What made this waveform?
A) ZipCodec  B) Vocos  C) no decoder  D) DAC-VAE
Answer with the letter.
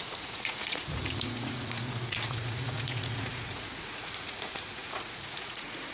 B